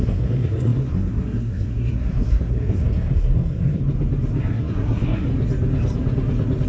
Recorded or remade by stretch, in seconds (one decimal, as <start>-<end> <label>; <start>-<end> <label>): 0.0-3.8 remade; 3.8-4.4 recorded; 4.4-5.3 remade; 5.3-6.7 recorded